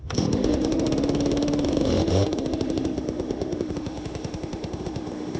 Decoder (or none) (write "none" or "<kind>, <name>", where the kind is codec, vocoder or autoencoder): autoencoder, DAC-VAE